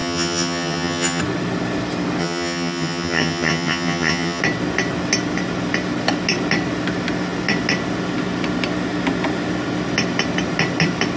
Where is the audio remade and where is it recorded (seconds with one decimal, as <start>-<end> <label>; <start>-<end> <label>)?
0.0-1.2 remade; 1.2-2.2 recorded; 2.2-4.4 remade; 4.4-11.2 recorded